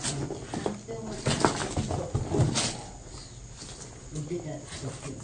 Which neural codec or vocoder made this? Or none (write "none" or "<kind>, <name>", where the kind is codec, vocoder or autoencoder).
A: none